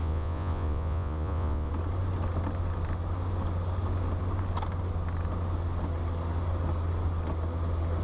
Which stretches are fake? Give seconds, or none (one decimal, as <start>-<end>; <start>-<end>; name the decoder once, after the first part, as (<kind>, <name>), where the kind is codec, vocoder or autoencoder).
0.0-1.7 (vocoder, Vocos)

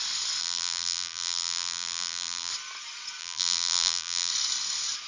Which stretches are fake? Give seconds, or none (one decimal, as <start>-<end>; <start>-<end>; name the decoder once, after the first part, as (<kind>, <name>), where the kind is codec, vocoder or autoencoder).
0.4-2.5 (vocoder, BigVGAN v2); 3.2-4.3

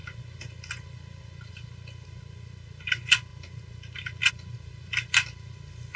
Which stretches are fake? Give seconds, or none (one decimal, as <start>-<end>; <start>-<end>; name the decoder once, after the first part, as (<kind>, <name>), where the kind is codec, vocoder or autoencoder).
none

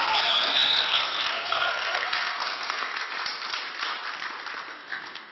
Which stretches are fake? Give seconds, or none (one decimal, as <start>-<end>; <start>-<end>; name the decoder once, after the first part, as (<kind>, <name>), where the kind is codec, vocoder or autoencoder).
0.0-3.1 (codec, SNAC); 4.7-5.3

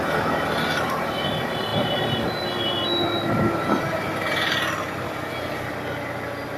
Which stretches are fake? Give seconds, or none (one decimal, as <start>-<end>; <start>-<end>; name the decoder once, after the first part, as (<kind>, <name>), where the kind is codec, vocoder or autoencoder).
none

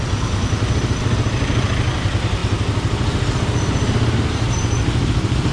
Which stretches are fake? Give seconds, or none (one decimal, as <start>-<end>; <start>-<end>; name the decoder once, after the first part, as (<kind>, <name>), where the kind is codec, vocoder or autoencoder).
none

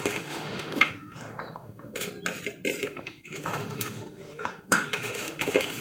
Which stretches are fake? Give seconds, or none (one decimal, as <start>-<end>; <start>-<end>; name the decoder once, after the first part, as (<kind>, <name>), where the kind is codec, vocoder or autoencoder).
0.0-2.1 (autoencoder, DAC-VAE); 2.8-5.8

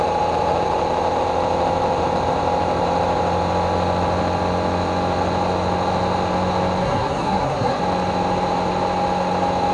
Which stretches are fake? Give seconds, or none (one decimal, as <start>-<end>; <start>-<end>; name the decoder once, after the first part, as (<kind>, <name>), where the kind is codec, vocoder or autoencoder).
6.8-7.8 (codec, SNAC)